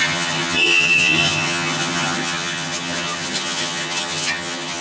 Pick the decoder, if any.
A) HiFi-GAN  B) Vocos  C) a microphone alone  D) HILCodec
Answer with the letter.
A